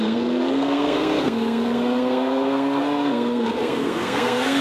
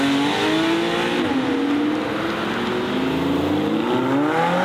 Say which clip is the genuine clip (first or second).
second